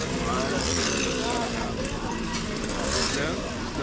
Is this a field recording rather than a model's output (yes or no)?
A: no